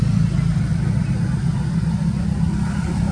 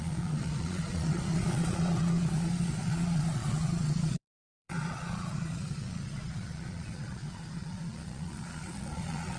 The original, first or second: first